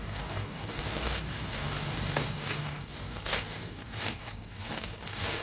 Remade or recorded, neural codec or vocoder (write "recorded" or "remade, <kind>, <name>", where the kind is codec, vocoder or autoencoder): remade, codec, DAC